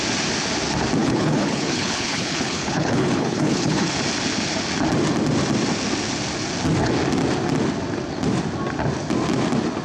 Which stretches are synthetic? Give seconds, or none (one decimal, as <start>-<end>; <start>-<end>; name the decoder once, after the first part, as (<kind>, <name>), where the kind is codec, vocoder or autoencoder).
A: 1.0-3.9 (codec, HILCodec)